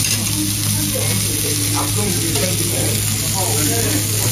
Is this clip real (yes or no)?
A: yes